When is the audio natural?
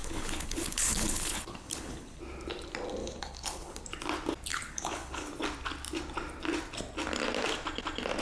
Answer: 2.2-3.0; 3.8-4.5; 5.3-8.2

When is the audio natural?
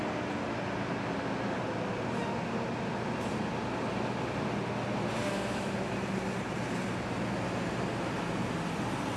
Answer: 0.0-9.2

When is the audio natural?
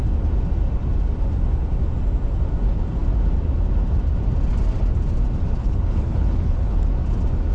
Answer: 0.0-5.6; 6.8-7.5